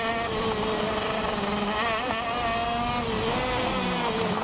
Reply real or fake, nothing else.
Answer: real